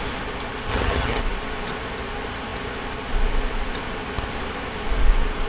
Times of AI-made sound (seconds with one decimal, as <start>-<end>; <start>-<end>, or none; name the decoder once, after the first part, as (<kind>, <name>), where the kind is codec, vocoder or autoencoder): 0.7-1.2 (vocoder, HiFi-GAN)

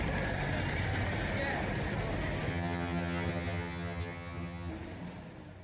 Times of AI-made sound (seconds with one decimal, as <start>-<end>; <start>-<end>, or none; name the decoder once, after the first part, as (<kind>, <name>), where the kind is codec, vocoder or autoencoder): 2.5-4.7 (vocoder, HiFi-GAN)

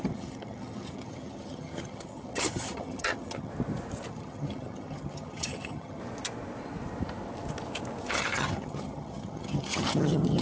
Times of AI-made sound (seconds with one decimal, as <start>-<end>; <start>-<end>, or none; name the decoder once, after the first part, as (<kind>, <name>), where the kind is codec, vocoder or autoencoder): 0.0-3.5 (vocoder, HiFi-GAN); 4.1-6.0; 8.1-10.4